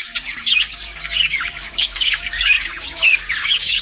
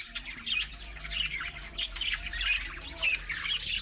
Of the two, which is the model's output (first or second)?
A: first